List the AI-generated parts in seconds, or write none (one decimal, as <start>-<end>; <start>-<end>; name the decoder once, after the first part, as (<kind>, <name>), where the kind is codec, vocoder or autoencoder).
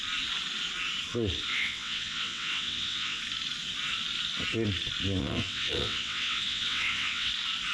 1.5-3.2 (vocoder, WaveNeXt); 5.2-7.3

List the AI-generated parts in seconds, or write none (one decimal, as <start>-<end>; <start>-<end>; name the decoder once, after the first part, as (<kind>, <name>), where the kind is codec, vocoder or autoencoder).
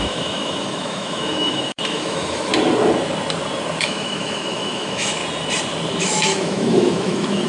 0.0-2.5 (autoencoder, DAC-VAE); 3.8-5.2; 6.0-7.5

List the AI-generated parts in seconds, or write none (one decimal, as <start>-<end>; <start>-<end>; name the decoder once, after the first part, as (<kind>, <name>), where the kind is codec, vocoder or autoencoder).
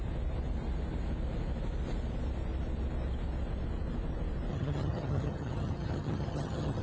4.5-6.8 (vocoder, HiFi-GAN)